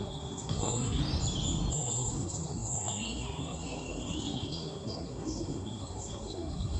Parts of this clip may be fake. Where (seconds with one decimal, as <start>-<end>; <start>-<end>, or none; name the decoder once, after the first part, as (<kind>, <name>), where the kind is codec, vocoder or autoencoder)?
0.0-1.0 (codec, SNAC); 1.7-6.8